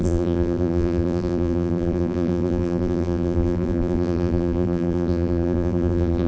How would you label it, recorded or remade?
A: remade